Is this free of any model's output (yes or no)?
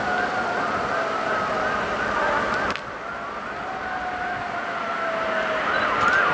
yes